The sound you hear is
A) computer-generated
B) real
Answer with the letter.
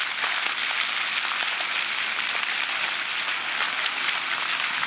B